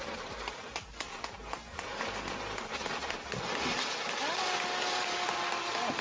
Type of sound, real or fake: real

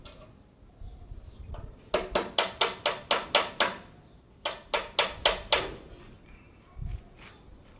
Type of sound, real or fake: real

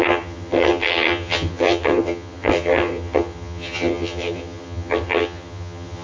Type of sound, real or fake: fake